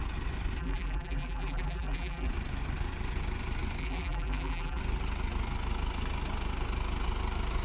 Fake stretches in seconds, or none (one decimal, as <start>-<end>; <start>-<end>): 0.6-2.3; 3.8-4.8